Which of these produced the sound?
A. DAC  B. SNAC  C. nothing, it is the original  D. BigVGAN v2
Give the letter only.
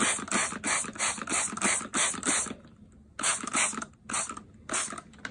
C